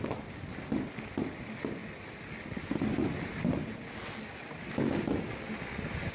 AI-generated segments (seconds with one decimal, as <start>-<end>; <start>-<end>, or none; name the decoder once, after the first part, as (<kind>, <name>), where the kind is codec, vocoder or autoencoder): none